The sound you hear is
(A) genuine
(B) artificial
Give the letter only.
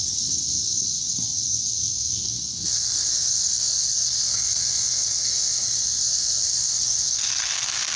B